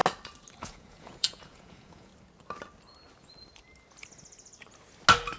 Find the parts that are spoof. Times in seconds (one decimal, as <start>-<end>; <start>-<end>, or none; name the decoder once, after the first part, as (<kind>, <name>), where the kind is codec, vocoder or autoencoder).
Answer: 0.6-2.1 (vocoder, Vocos)